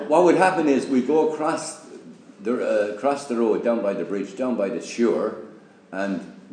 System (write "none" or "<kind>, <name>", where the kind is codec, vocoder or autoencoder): none